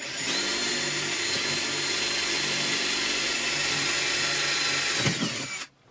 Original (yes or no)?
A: yes